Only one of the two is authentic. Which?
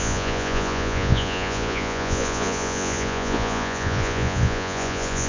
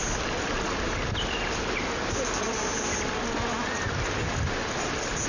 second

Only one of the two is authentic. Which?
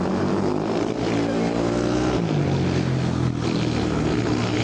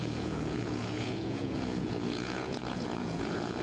first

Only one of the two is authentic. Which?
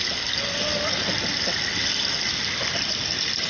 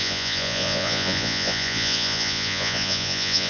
first